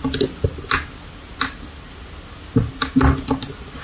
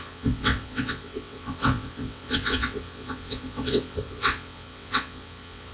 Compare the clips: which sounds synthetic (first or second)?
second